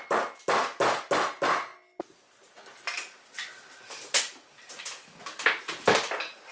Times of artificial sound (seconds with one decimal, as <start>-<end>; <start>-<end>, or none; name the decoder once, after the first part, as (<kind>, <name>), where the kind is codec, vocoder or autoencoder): none